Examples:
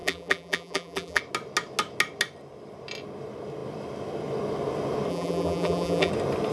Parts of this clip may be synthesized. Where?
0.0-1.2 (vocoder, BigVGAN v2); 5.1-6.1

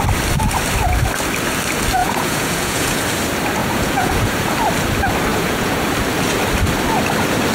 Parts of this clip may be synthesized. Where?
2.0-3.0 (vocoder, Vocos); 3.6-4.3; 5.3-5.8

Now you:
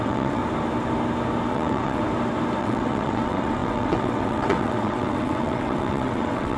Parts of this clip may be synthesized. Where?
0.0-0.4 (vocoder, WaveNeXt); 1.5-2.0; 2.6-6.6